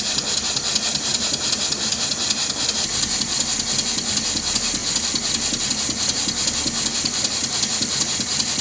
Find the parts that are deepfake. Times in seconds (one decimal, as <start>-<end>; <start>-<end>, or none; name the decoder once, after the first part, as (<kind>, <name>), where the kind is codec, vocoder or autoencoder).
none